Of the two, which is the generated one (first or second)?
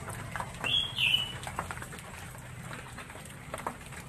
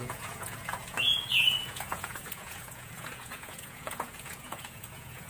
second